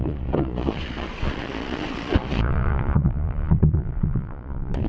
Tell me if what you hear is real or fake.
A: fake